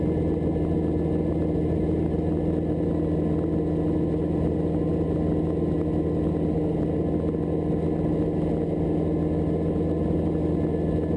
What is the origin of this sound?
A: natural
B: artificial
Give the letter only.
A